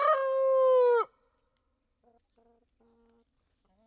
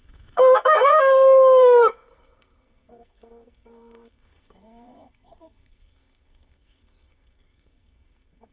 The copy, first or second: second